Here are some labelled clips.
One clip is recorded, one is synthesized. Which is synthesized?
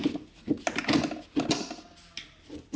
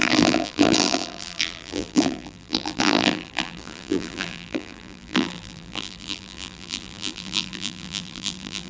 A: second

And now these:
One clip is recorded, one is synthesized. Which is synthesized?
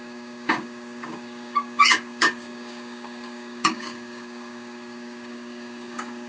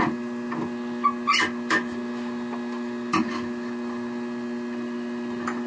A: first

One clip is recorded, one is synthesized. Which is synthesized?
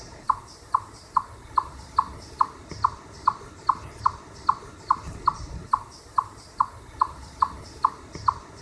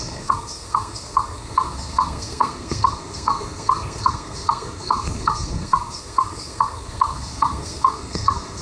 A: second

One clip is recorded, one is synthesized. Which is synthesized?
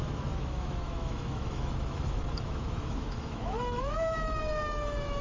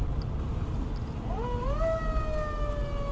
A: first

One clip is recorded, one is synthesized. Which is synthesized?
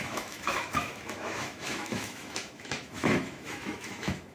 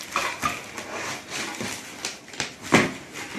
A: first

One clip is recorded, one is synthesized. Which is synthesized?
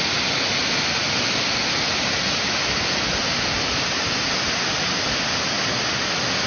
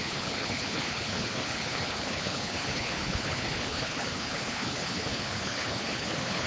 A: second